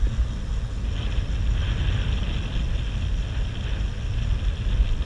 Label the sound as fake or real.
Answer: real